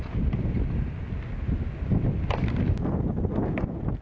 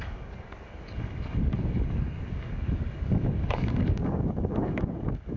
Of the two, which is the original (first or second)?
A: first